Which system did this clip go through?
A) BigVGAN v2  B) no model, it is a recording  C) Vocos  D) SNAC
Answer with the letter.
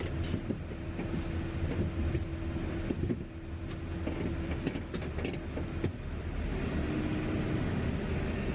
B